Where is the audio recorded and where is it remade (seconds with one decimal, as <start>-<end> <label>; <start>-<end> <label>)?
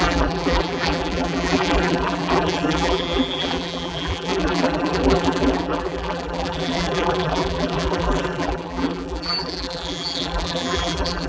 0.0-11.3 remade